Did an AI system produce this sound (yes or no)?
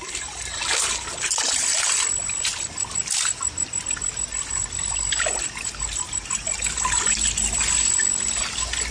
no